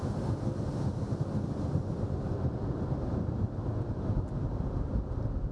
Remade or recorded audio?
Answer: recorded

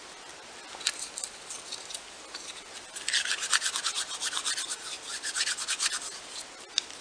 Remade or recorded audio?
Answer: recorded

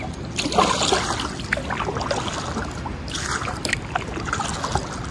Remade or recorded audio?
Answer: recorded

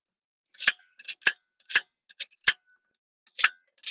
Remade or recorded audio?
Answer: recorded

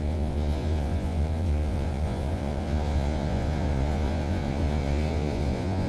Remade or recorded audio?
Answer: remade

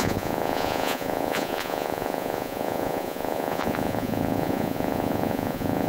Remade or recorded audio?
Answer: remade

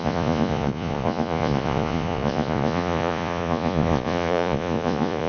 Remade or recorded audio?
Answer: remade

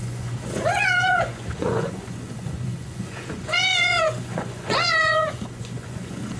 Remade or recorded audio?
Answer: remade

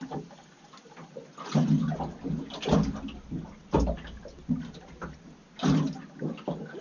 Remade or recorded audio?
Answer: recorded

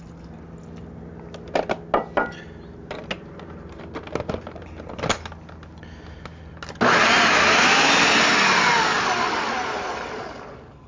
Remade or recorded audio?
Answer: recorded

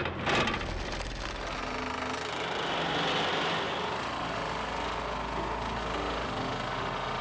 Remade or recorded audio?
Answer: recorded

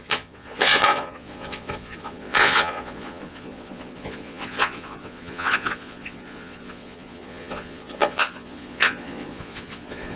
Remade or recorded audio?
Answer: remade